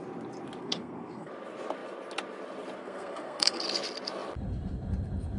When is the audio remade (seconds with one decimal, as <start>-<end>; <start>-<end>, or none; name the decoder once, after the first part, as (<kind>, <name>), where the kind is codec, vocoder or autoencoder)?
0.6-1.3 (codec, SNAC); 2.8-3.6